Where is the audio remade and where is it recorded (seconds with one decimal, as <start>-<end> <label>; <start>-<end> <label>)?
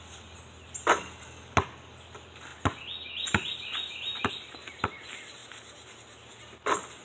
0.0-7.0 recorded